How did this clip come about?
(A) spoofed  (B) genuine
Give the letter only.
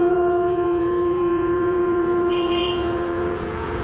A